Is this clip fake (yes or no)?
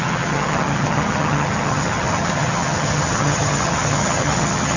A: yes